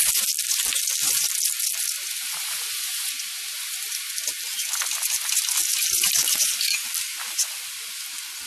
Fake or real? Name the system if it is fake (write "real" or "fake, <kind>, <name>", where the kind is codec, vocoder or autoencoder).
real